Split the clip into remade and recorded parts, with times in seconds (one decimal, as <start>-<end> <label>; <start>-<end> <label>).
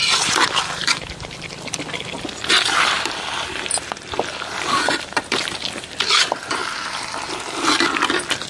0.0-0.6 recorded; 0.6-8.5 remade